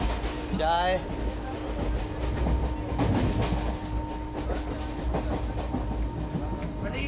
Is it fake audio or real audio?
real